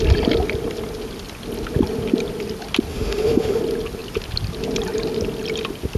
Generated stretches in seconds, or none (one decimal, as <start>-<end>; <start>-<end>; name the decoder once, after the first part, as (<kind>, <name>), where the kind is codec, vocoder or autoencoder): 2.9-3.6 (autoencoder, DAC-VAE)